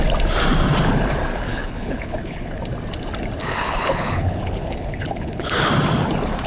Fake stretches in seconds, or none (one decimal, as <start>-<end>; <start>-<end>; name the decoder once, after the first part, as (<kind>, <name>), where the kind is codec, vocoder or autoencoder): 1.3-2.6 (codec, HILCodec); 3.4-5.7